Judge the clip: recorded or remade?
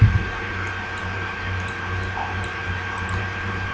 remade